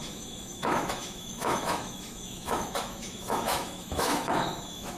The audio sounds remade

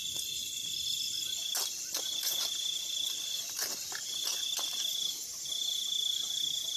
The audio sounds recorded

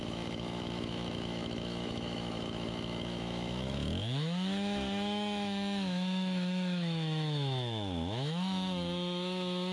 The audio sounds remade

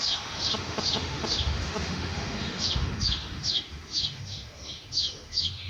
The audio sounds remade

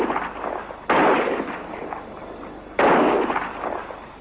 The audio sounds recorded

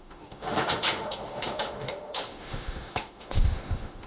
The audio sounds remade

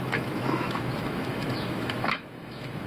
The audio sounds remade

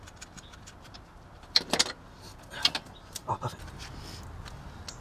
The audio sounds recorded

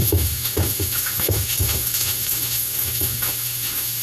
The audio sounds remade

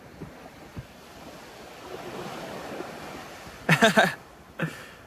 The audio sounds recorded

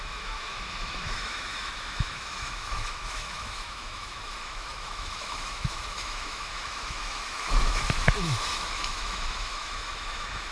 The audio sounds remade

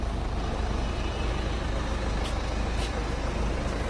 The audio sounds recorded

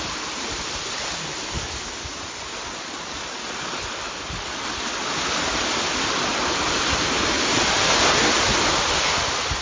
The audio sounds recorded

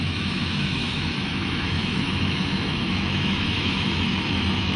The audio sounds remade